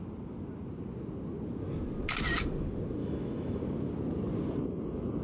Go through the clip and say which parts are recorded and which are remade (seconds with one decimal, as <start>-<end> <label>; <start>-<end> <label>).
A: 0.0-3.0 recorded; 3.0-3.6 remade; 3.6-5.2 recorded